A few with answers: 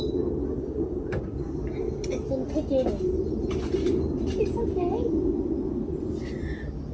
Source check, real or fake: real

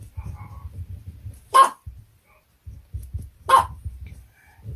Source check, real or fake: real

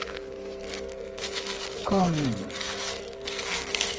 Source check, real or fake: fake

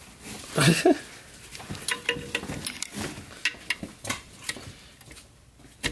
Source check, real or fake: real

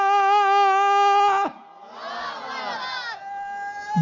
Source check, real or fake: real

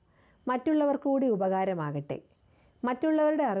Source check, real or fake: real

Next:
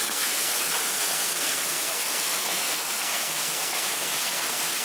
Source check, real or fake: fake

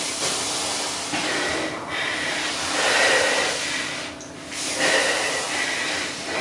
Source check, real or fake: real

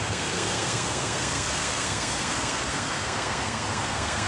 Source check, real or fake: fake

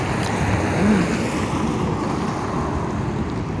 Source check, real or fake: real